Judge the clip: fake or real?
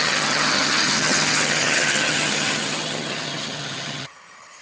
fake